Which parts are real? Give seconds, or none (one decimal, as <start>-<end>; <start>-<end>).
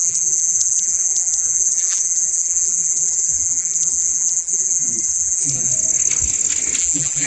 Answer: 5.7-6.8